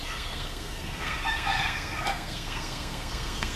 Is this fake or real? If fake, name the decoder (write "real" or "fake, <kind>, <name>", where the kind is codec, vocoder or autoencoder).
fake, codec, SNAC